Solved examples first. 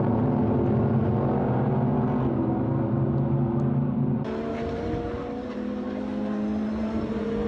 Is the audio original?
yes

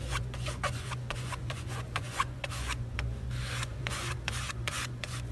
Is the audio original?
no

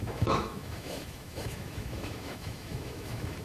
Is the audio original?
no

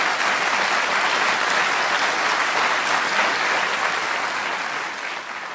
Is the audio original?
yes